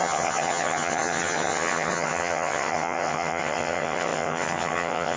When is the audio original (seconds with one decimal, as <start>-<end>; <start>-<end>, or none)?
none